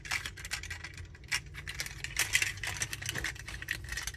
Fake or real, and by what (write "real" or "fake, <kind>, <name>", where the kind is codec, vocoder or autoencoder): real